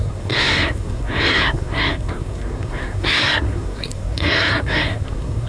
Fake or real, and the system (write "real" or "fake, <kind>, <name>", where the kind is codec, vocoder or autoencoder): fake, codec, SNAC